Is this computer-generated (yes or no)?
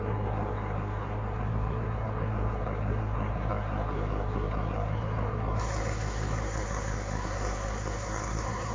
yes